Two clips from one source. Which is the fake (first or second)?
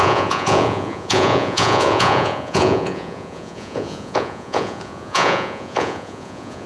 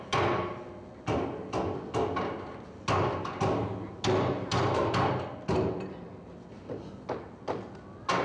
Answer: first